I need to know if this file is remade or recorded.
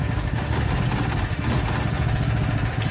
recorded